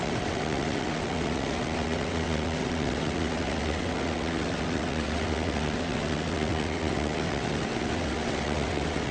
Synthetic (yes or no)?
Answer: yes